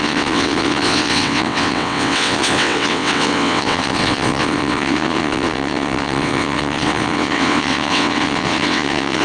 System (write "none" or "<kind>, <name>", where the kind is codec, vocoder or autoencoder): vocoder, WaveNeXt